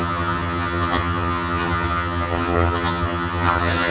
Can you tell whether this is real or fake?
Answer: fake